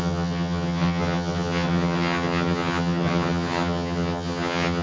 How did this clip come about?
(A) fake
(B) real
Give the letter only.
A